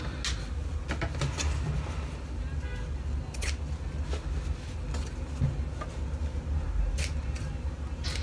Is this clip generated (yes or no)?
no